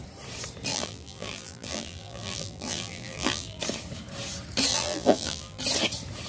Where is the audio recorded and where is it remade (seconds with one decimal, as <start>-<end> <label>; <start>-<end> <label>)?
0.0-0.7 recorded; 0.7-3.6 remade; 3.6-4.7 recorded; 4.7-5.6 remade; 5.6-6.3 recorded